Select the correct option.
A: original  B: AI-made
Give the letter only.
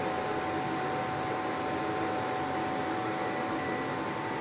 A